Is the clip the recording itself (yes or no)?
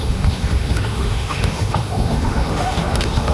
no